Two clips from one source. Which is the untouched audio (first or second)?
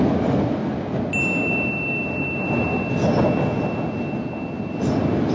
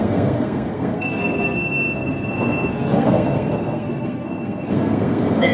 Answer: first